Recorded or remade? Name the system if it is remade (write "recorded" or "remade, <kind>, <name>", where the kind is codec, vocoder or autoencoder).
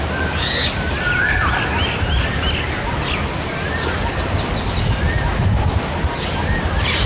recorded